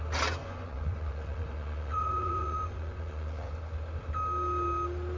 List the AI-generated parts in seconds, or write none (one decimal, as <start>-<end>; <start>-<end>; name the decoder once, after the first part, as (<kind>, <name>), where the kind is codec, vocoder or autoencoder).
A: 0.4-3.5 (vocoder, Vocos)